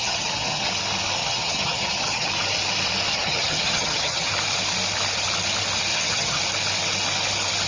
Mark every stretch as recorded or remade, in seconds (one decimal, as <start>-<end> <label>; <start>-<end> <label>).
0.0-0.7 remade; 0.7-1.2 recorded; 1.2-2.3 remade; 2.3-3.1 recorded; 3.1-4.3 remade; 4.3-5.9 recorded; 5.9-6.4 remade; 6.4-7.7 recorded